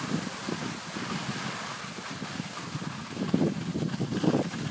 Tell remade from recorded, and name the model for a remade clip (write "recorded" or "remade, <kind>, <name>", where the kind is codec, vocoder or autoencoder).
recorded